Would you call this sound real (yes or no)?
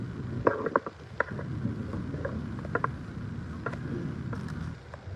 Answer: yes